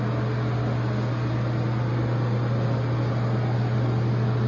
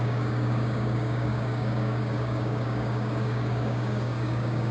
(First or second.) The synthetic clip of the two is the second